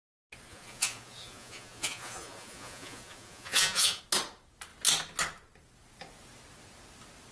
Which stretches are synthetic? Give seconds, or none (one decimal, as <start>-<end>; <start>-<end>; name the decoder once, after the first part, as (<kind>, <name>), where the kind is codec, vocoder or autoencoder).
0.5-4.0 (vocoder, Vocos)